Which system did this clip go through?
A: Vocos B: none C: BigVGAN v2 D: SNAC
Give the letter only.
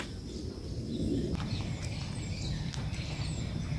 C